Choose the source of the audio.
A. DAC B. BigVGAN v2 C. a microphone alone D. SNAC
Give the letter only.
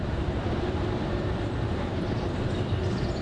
B